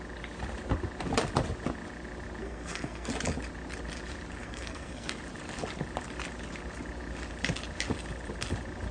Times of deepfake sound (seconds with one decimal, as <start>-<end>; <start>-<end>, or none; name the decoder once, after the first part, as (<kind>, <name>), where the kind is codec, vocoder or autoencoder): 2.4-3.1 (codec, SNAC); 4.4-5.1